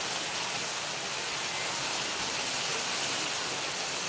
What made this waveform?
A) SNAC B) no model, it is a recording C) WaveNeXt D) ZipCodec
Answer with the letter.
B